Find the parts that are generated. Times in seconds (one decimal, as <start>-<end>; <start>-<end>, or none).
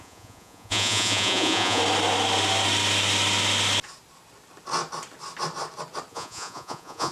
0.0-1.8; 6.1-7.1